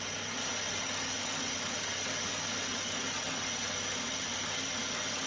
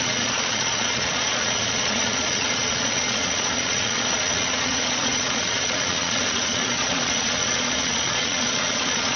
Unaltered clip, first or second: first